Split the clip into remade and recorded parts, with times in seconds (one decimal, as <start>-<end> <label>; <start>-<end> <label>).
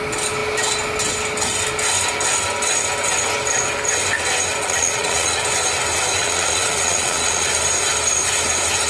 0.0-4.6 recorded; 4.6-5.4 remade; 5.4-6.2 recorded; 6.2-7.5 remade; 7.5-8.9 recorded